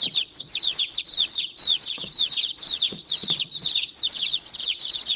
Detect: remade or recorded remade